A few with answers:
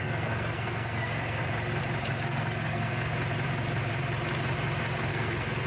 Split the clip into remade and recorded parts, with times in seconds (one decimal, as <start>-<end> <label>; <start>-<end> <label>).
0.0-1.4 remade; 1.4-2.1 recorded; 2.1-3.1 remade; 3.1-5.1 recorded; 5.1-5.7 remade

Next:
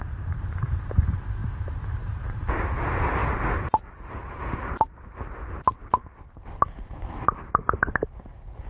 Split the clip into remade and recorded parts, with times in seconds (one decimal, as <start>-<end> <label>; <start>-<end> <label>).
0.0-8.7 remade

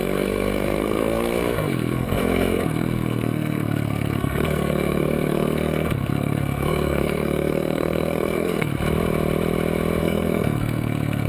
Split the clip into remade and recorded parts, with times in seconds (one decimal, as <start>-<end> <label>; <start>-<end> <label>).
0.0-8.7 remade; 8.7-10.0 recorded; 10.0-11.3 remade

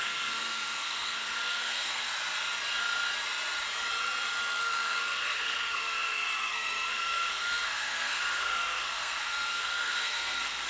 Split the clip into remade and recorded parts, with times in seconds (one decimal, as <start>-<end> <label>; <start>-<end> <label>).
0.0-2.1 remade; 2.1-4.4 recorded; 4.4-10.7 remade

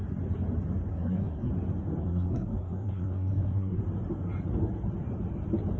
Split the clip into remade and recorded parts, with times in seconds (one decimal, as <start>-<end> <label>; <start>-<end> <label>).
0.0-0.9 recorded; 0.9-1.5 remade; 1.5-2.0 recorded; 2.0-3.8 remade; 3.8-5.8 recorded

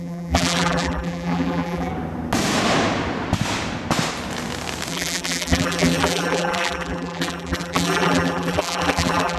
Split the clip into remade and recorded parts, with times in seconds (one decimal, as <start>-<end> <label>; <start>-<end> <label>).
0.0-1.9 remade; 1.9-4.9 recorded; 4.9-9.4 remade